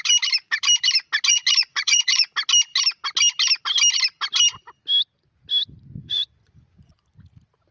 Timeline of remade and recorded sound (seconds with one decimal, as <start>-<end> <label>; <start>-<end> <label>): 0.0-1.3 recorded; 1.3-2.3 remade; 2.3-6.0 recorded; 6.0-6.9 remade; 6.9-7.7 recorded